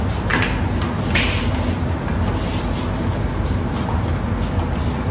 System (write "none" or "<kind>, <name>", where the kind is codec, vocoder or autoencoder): none